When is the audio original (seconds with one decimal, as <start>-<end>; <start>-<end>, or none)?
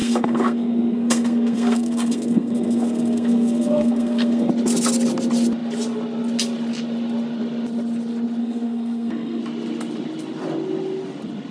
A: 4.5-8.4; 9.4-11.5